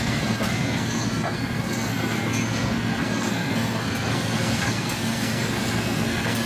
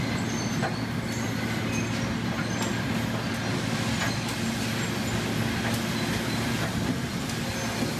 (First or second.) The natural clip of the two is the second